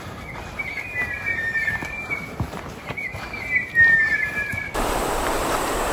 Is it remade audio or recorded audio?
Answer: remade